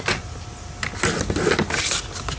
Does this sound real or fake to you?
real